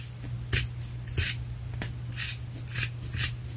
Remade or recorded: recorded